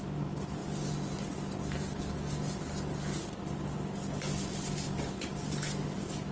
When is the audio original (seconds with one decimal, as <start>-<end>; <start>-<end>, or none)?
0.0-6.3